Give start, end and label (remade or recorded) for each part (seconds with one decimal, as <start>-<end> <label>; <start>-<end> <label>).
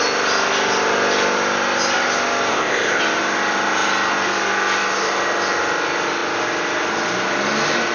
0.0-2.5 recorded; 2.5-3.0 remade; 3.0-7.9 recorded